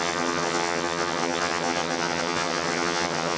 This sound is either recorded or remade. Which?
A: remade